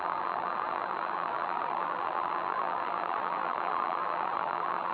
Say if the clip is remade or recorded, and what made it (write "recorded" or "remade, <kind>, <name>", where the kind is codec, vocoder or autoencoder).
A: remade, vocoder, BigVGAN v2